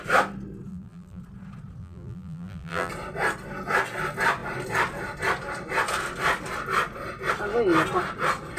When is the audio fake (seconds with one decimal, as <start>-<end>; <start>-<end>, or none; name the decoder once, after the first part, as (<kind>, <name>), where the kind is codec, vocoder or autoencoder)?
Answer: 0.7-1.2 (vocoder, BigVGAN v2); 1.8-2.9